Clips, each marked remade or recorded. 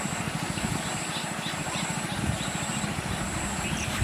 remade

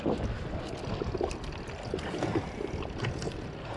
recorded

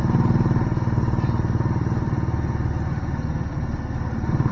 recorded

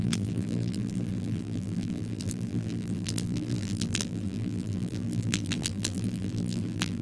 remade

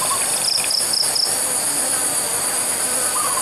recorded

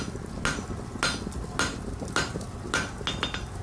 recorded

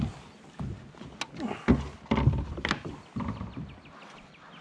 recorded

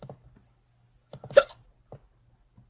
recorded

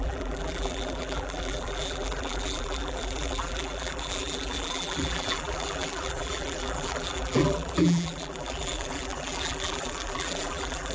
remade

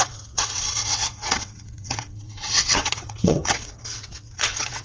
remade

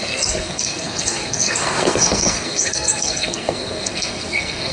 remade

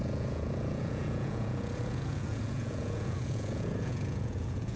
remade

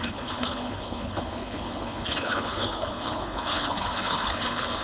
remade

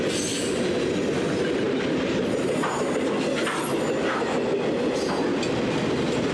recorded